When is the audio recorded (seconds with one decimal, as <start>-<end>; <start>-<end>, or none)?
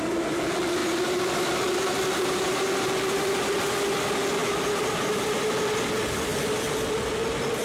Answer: 0.0-0.8; 3.7-4.4; 5.5-7.6